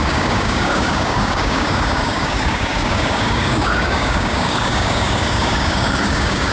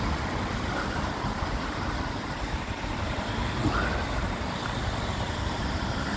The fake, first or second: first